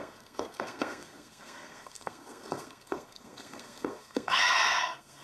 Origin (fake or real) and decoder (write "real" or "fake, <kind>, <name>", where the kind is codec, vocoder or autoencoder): fake, codec, SNAC